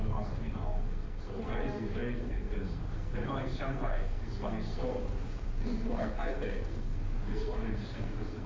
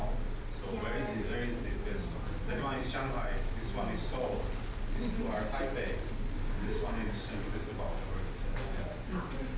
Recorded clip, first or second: second